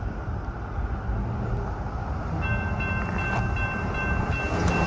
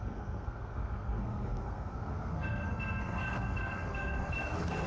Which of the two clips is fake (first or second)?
second